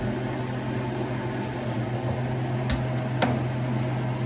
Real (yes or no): yes